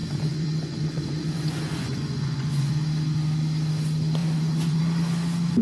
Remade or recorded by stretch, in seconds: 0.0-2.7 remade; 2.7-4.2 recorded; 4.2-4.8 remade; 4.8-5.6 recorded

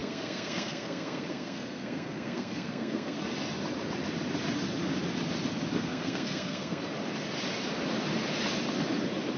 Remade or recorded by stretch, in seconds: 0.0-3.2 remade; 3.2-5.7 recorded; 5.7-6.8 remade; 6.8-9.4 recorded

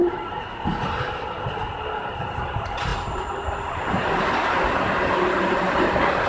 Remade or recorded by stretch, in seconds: 0.0-0.6 remade; 0.6-2.9 recorded; 2.9-6.3 remade

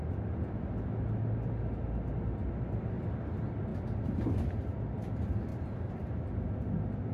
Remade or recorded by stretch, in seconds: 0.0-5.5 recorded; 5.5-6.2 remade; 6.2-7.1 recorded

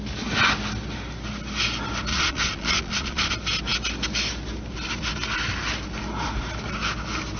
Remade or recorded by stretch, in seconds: 0.0-2.1 recorded; 2.1-3.3 remade; 3.3-7.4 recorded

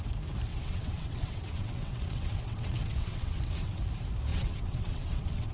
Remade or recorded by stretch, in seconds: 0.0-0.5 recorded; 0.5-3.8 remade; 3.8-4.3 recorded; 4.3-5.5 remade

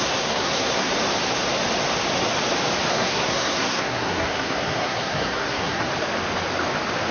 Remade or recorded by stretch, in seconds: 0.0-0.9 remade; 0.9-2.9 recorded; 2.9-5.9 remade; 5.9-7.1 recorded

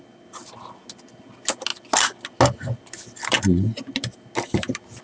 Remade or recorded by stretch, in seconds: 0.0-5.0 recorded